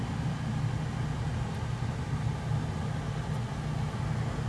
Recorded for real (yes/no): yes